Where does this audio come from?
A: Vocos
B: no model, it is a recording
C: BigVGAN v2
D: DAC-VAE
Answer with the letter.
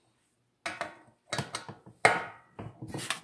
B